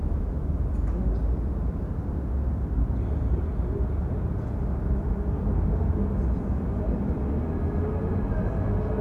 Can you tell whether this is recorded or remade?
recorded